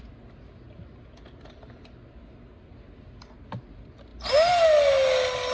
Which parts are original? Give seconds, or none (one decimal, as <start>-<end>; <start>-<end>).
0.0-5.5